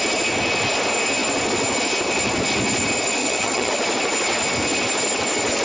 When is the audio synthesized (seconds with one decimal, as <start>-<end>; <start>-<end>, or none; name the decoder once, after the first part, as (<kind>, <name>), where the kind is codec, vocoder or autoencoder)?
3.2-3.7 (vocoder, HiFi-GAN)